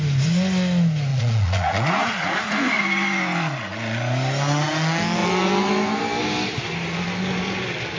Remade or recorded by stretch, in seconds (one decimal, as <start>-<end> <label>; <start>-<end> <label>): 0.0-1.1 recorded; 1.1-2.8 remade; 2.8-8.0 recorded